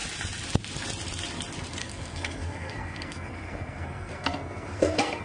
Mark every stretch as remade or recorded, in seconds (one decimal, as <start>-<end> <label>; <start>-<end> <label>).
0.0-1.8 recorded; 1.8-5.2 remade